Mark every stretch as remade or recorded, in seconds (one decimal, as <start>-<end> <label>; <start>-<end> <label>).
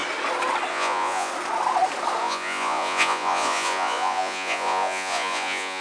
0.0-0.7 recorded; 0.7-1.3 remade; 1.3-2.2 recorded; 2.2-5.8 remade